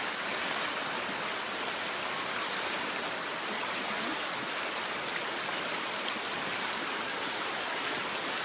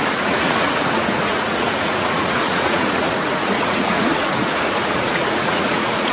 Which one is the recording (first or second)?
first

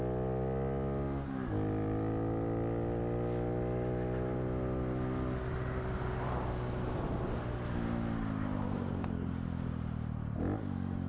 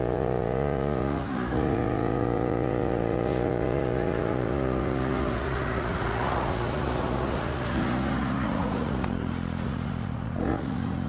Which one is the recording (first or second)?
first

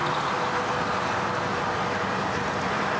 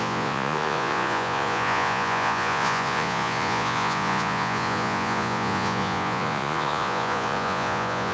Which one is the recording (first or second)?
first